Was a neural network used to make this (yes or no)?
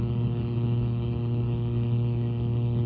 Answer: yes